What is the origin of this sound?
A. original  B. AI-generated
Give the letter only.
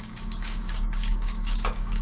B